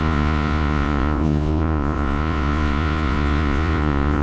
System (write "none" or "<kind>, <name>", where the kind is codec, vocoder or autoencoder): vocoder, Vocos